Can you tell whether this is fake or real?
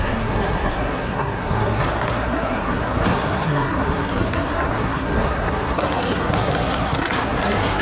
fake